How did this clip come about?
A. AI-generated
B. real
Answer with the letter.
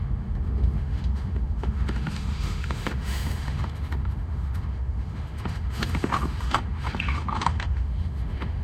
A